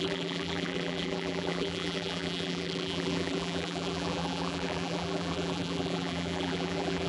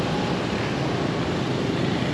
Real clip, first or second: second